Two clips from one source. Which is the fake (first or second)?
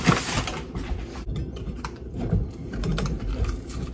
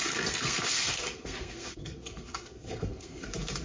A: second